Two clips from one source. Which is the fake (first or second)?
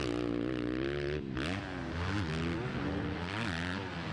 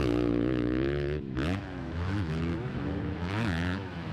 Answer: second